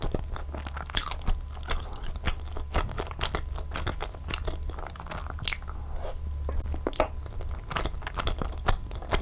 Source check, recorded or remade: recorded